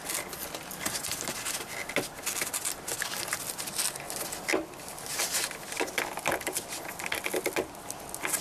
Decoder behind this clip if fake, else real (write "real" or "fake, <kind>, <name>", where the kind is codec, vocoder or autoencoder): real